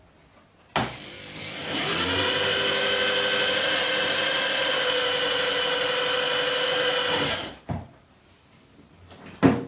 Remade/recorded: recorded